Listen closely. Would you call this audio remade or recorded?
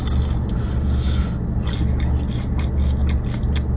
recorded